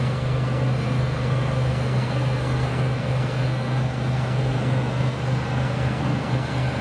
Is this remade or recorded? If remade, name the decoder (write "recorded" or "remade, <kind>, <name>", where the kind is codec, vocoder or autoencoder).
remade, codec, SNAC